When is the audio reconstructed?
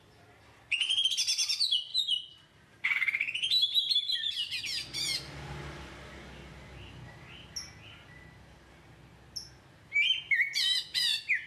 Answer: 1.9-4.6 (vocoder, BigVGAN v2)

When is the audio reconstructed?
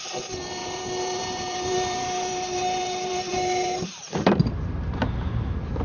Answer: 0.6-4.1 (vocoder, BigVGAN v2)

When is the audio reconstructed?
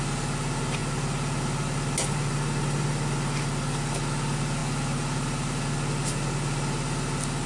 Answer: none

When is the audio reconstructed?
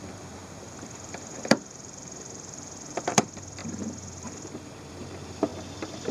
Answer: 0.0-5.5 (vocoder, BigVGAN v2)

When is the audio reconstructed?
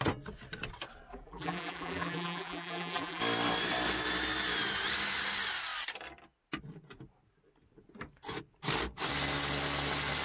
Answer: 1.1-3.2 (vocoder, BigVGAN v2)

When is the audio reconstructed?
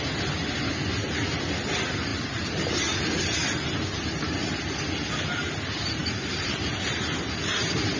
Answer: 2.1-3.0 (vocoder, BigVGAN v2); 6.0-6.7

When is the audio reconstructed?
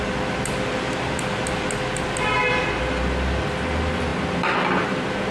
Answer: none